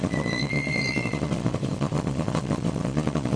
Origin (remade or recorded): remade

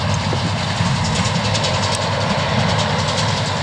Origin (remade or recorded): recorded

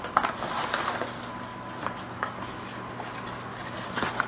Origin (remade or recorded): recorded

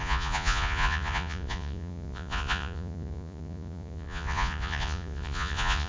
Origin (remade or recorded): remade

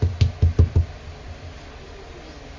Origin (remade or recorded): recorded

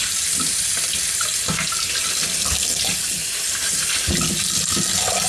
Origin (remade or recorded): recorded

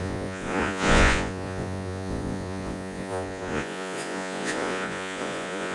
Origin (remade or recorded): remade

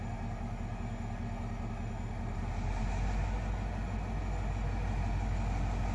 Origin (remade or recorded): recorded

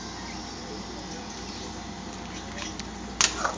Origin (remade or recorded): recorded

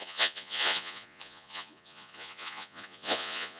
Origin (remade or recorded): remade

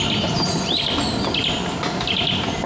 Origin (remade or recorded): recorded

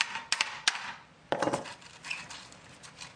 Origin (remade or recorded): recorded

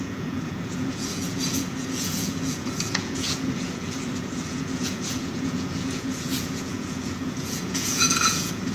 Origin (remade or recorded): remade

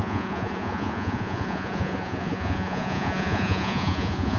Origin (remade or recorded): remade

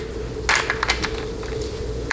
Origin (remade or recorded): recorded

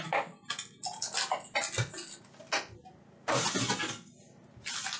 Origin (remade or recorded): recorded